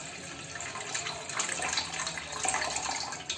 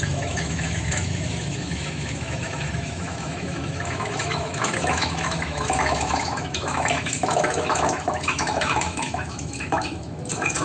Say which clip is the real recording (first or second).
first